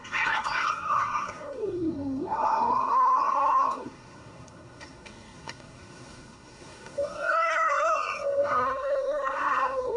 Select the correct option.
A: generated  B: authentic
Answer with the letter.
A